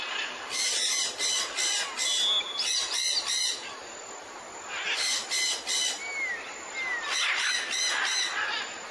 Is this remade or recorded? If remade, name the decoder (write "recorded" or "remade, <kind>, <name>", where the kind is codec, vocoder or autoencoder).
recorded